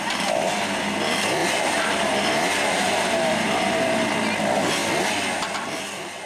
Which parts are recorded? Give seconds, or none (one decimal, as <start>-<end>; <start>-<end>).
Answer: 0.0-1.4; 4.1-6.3